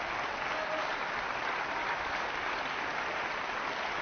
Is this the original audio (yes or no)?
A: yes